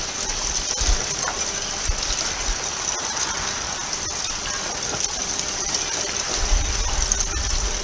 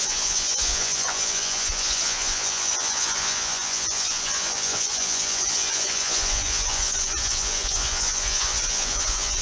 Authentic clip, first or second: first